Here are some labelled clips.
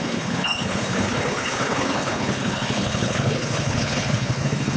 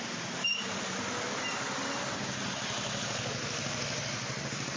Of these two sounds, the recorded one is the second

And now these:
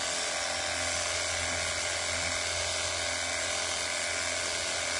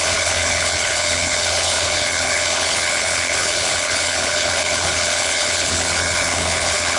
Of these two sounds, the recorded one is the first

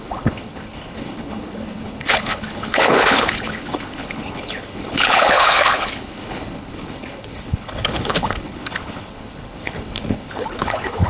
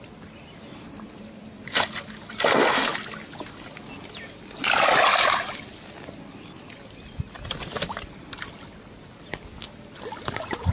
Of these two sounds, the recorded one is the second